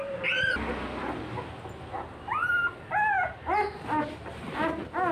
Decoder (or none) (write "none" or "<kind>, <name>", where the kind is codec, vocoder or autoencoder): none